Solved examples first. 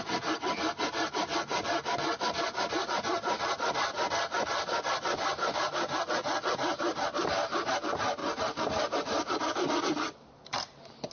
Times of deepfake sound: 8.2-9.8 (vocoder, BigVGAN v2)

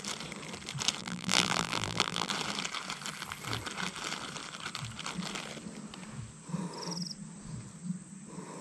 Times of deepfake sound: 1.0-2.3 (vocoder, BigVGAN v2)